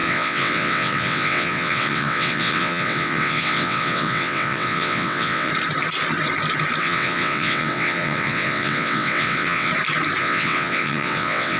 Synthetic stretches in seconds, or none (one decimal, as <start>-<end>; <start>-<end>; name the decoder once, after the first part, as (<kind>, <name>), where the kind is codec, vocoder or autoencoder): 0.0-5.5 (vocoder, WaveNeXt); 6.8-9.7; 10.2-11.6